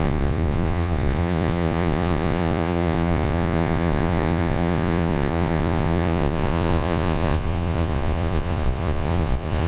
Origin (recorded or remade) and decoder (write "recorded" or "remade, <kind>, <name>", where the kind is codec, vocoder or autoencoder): remade, vocoder, Vocos